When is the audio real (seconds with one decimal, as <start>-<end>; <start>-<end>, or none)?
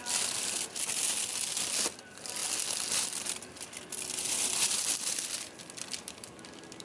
0.0-6.8